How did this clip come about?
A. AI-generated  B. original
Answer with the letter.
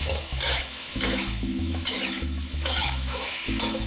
A